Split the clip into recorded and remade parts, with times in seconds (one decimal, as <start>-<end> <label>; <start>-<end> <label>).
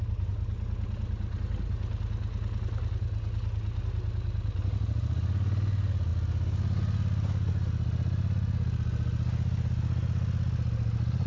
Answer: 0.0-11.3 recorded